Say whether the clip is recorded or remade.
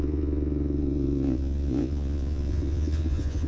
remade